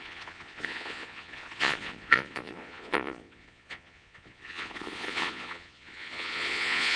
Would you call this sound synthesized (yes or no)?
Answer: yes